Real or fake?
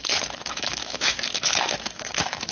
fake